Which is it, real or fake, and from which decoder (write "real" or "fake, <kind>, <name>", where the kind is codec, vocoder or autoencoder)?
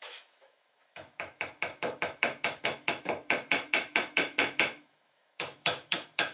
fake, autoencoder, DAC-VAE